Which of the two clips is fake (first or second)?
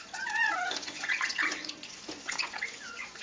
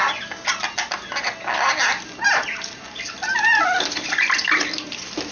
first